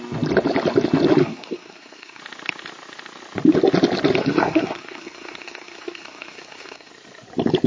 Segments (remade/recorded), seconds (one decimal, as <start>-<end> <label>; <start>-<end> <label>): 0.0-1.2 recorded; 1.2-2.2 remade; 2.2-4.2 recorded; 4.2-6.9 remade; 6.9-7.7 recorded